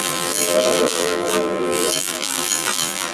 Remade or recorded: remade